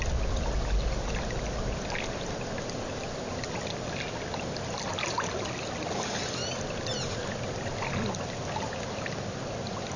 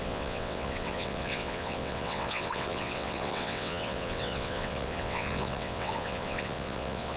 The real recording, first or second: first